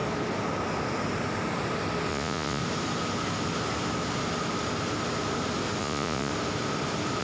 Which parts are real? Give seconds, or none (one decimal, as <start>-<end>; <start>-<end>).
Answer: 0.0-2.1; 2.6-5.8; 6.3-7.2